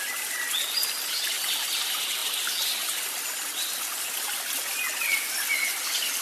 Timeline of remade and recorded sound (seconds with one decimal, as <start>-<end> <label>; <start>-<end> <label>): 0.0-6.2 recorded

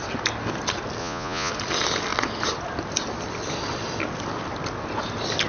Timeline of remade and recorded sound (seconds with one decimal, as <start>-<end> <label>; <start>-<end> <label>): 0.0-1.0 recorded; 1.0-1.5 remade; 1.5-5.5 recorded

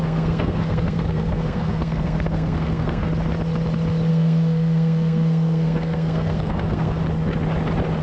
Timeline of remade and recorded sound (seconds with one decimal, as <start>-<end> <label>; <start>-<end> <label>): 0.0-3.1 remade; 3.1-4.1 recorded; 4.1-7.0 remade; 7.0-8.0 recorded

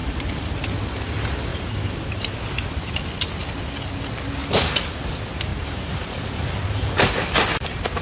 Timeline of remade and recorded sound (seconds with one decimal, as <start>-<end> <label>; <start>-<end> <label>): 0.0-0.6 remade; 0.6-1.5 recorded; 1.5-2.3 remade; 2.3-4.4 recorded; 4.4-5.1 remade; 5.1-5.5 recorded; 5.5-7.4 remade; 7.4-8.0 recorded